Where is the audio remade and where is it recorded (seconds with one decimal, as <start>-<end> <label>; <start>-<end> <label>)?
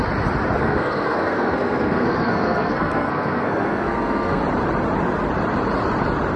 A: 0.0-0.6 recorded; 0.6-4.4 remade; 4.4-6.4 recorded